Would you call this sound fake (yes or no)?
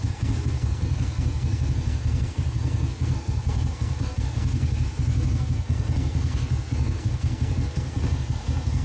yes